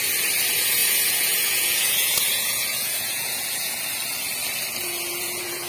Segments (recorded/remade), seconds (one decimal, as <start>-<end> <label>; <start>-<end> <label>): 0.0-0.8 recorded; 0.8-3.7 remade; 3.7-4.8 recorded; 4.8-5.7 remade